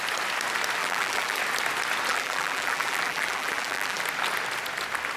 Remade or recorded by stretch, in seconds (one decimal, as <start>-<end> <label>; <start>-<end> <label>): 0.0-0.8 recorded; 0.8-1.4 remade; 1.4-2.1 recorded; 2.1-4.0 remade; 4.0-5.2 recorded